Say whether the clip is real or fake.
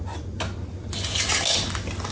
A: real